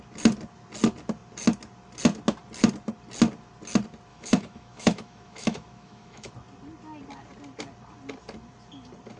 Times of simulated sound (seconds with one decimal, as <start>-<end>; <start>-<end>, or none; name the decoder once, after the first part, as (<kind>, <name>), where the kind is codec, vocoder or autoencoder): 4.1-6.3 (autoencoder, DAC-VAE)